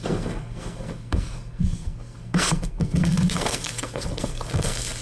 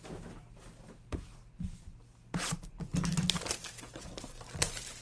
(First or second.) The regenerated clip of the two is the first